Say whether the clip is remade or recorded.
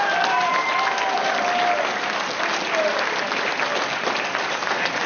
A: recorded